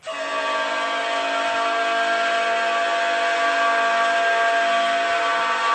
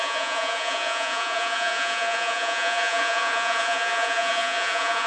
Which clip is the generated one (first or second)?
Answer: second